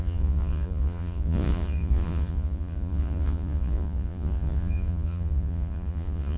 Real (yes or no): no